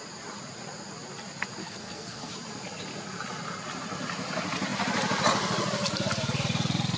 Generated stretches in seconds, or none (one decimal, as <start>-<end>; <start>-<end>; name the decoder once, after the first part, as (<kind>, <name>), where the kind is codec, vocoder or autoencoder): 1.6-2.3 (codec, SNAC)